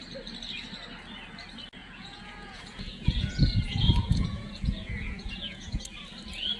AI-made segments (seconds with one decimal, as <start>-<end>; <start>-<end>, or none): 1.8-5.8